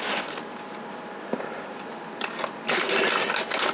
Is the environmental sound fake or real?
real